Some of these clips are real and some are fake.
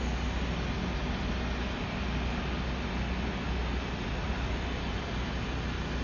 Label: real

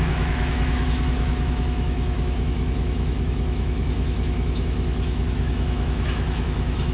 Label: fake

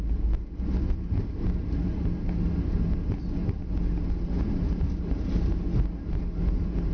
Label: real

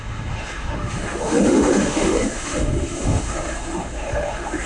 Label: fake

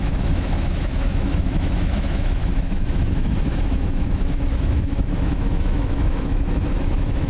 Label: fake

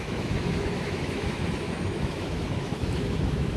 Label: fake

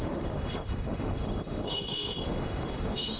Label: fake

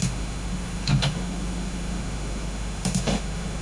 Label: fake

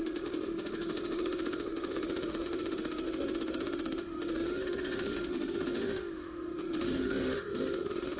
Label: fake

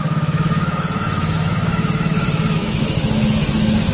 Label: fake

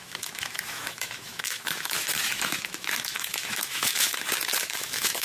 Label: fake